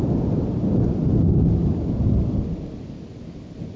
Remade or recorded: recorded